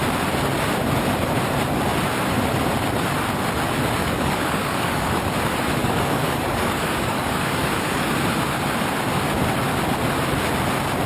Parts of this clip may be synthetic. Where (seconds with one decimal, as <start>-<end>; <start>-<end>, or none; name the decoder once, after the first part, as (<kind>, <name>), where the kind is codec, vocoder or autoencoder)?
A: 4.0-5.2 (codec, DAC); 5.8-8.1